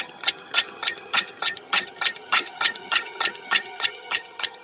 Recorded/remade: remade